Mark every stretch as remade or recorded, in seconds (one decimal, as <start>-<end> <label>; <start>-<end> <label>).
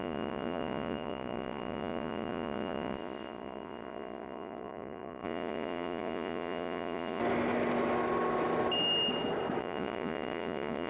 0.0-7.2 remade; 7.2-9.6 recorded; 9.6-10.9 remade